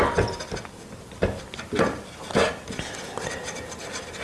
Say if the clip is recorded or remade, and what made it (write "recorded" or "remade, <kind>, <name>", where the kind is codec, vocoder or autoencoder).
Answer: recorded